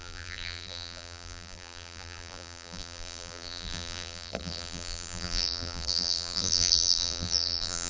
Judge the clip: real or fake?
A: fake